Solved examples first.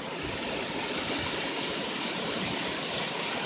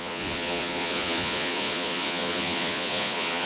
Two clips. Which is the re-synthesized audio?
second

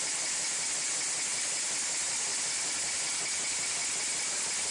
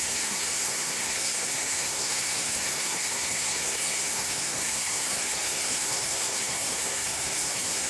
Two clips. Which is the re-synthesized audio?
second